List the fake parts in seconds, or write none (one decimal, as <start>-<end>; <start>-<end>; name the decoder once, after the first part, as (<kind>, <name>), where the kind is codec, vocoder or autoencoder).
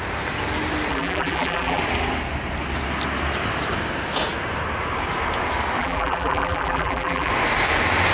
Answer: 0.9-1.8 (vocoder, BigVGAN v2); 5.8-7.3